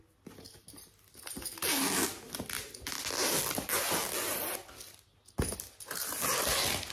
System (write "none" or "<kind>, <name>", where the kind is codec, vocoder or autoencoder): none